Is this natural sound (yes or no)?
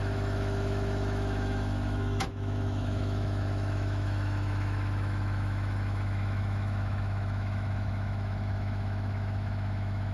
no